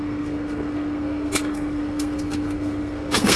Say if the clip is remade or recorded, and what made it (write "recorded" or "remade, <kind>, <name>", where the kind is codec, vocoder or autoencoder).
remade, codec, SNAC